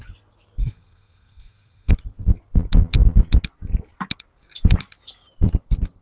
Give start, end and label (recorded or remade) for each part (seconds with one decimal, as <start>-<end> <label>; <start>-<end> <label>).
0.0-0.6 recorded; 0.6-1.9 remade; 1.9-6.0 recorded

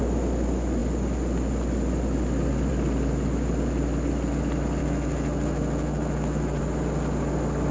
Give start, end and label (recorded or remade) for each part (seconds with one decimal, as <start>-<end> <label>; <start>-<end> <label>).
0.0-4.8 recorded; 4.8-6.6 remade; 6.6-7.7 recorded

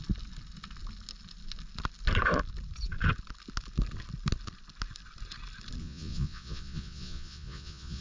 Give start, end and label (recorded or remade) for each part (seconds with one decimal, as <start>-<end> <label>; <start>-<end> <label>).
0.0-5.8 recorded; 5.8-8.0 remade

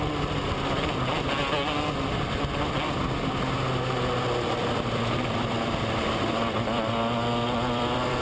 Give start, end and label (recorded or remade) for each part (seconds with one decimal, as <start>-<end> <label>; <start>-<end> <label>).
0.0-4.6 recorded; 4.6-8.2 remade

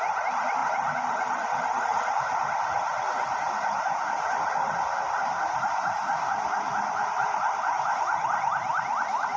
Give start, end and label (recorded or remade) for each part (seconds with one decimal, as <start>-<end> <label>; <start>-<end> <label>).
0.0-9.4 recorded